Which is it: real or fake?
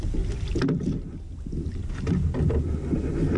real